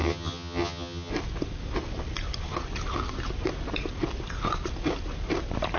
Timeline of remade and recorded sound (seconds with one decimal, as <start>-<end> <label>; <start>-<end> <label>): 0.0-1.1 remade; 1.1-5.8 recorded